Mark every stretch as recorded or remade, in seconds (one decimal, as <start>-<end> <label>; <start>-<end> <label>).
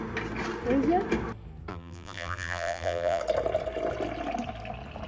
0.0-1.7 recorded; 1.7-3.2 remade; 3.2-5.1 recorded